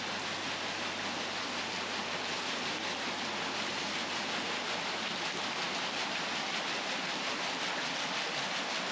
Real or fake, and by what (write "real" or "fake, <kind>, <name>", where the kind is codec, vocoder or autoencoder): real